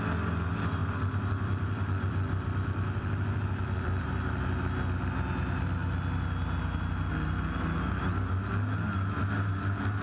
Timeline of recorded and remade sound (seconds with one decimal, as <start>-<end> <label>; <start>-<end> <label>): 0.0-0.8 recorded; 0.8-4.6 remade; 4.6-10.0 recorded